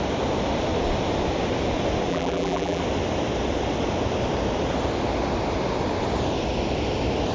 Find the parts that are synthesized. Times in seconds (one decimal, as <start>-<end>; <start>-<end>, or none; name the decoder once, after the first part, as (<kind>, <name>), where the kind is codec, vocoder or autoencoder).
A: 2.1-2.8 (vocoder, BigVGAN v2)